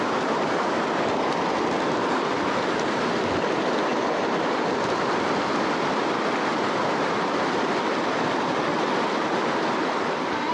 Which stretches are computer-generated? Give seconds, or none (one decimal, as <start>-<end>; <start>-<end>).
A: none